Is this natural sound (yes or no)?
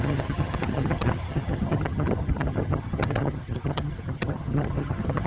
no